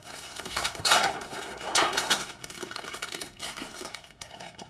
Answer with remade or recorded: remade